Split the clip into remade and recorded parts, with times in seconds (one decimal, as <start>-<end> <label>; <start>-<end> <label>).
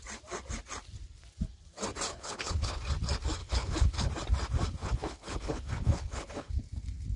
0.0-2.1 recorded; 2.1-2.8 remade; 2.8-3.4 recorded; 3.4-4.1 remade; 4.1-4.8 recorded; 4.8-6.5 remade; 6.5-7.2 recorded